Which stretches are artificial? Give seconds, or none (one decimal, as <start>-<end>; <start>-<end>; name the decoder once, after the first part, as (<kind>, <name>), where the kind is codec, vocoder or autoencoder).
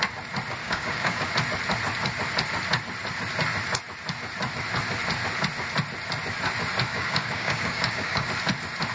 0.6-1.3 (codec, DAC); 6.9-8.3